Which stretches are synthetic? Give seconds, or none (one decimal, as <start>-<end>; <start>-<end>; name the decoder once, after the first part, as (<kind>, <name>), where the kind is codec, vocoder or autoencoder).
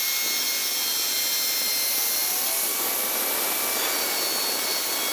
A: none